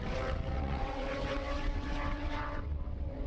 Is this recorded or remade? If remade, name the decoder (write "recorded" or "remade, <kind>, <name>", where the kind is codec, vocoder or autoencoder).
remade, vocoder, WaveNeXt